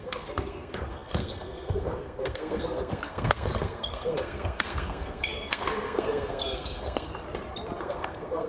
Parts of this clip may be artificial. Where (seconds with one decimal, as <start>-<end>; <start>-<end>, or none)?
0.0-7.1; 7.8-8.5